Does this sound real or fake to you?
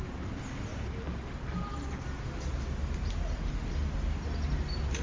real